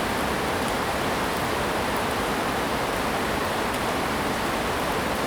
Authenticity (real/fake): real